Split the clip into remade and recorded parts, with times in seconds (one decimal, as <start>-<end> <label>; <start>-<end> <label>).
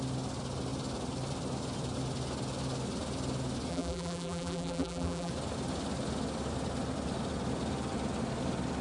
0.0-3.7 recorded; 3.7-5.3 remade; 5.3-8.8 recorded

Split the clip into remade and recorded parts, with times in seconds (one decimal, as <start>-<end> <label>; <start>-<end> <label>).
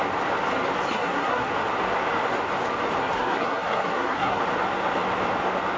0.0-0.9 recorded; 0.9-1.5 remade; 1.5-3.0 recorded; 3.0-4.4 remade; 4.4-5.8 recorded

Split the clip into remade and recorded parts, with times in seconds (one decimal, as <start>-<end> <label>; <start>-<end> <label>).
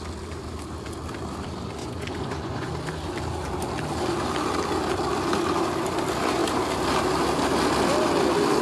0.0-1.8 recorded; 1.8-2.7 remade; 2.7-8.6 recorded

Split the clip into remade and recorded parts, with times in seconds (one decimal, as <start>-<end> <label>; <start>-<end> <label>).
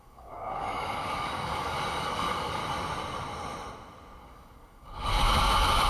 0.0-2.6 remade; 2.6-4.2 recorded; 4.2-5.1 remade; 5.1-5.9 recorded